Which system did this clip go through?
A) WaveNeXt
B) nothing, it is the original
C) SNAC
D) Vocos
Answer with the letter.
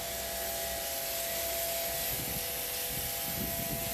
B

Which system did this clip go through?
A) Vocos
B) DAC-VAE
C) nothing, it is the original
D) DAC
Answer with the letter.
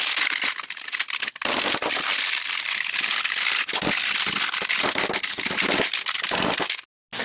C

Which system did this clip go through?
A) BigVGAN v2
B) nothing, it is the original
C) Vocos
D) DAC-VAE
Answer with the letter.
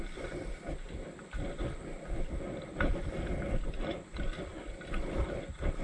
B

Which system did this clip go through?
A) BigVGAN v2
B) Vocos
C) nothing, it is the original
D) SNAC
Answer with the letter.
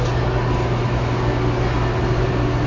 C